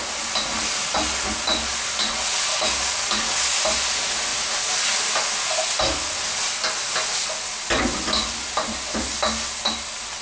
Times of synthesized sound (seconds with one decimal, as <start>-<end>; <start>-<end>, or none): 2.5-3.6